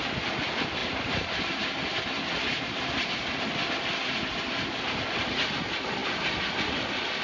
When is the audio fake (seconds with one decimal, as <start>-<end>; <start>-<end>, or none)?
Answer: 0.8-3.4; 6.0-6.7